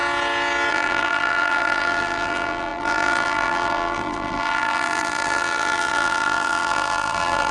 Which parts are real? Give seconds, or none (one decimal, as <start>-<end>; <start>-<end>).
0.0-0.7